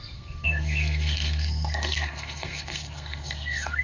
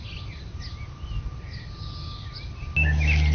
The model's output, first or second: first